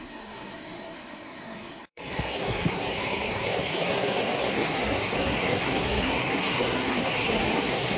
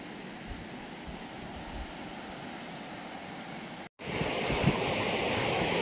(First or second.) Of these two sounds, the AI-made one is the first